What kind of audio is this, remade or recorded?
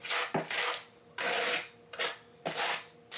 recorded